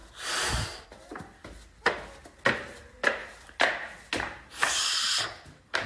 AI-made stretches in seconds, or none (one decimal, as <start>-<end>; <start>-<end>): 0.0-0.5